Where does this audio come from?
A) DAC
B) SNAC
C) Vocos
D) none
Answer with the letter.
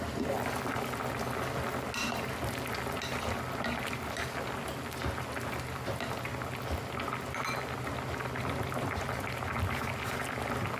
D